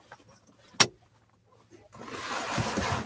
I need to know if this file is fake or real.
real